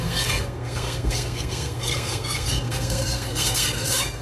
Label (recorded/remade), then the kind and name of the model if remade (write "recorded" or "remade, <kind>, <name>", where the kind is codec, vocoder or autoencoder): remade, codec, SNAC